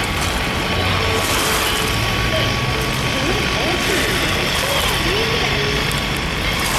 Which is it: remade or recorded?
recorded